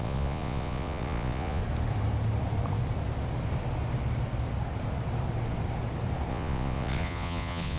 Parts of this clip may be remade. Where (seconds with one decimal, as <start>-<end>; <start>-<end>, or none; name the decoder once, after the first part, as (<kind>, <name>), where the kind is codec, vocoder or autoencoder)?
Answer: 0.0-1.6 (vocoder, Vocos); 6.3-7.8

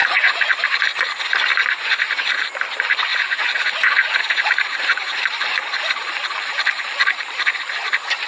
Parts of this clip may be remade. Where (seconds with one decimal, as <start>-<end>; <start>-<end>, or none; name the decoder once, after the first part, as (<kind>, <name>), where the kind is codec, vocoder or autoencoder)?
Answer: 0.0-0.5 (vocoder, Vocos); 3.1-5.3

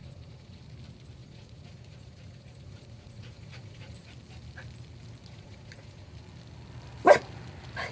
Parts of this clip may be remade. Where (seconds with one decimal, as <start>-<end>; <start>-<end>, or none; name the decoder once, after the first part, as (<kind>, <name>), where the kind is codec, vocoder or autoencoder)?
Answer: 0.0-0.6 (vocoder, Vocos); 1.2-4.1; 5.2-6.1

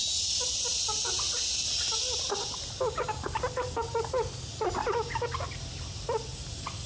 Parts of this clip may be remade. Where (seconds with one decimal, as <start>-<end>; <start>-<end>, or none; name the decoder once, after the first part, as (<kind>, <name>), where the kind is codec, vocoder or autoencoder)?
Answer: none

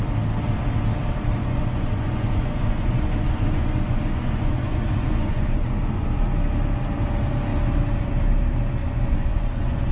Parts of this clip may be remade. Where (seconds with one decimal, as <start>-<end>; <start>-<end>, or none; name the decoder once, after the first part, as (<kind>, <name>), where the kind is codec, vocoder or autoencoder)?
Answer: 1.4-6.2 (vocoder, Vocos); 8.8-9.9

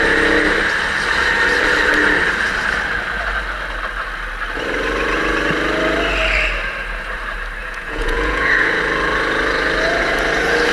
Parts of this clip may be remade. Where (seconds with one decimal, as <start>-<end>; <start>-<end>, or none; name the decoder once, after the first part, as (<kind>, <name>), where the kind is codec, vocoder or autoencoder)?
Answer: 7.6-8.8 (vocoder, Vocos)

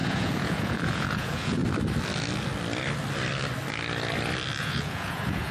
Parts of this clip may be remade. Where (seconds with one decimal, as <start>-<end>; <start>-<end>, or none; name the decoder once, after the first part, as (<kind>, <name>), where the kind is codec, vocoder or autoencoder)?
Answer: 0.0-1.6 (vocoder, Vocos); 4.6-5.5